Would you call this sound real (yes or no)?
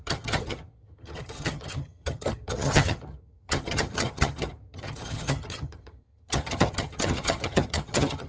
no